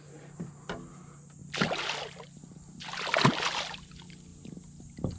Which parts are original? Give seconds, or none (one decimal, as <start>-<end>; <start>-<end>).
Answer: 0.0-1.4; 3.9-5.2